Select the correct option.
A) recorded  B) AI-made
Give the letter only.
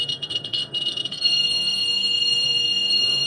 B